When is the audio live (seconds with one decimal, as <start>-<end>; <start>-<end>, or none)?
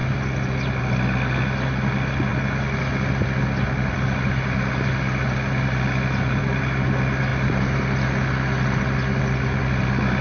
0.0-10.2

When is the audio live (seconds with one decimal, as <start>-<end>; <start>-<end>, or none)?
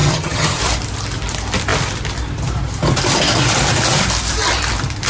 0.6-5.1